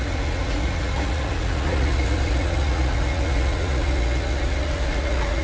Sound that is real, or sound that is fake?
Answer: fake